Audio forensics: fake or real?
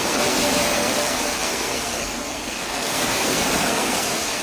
fake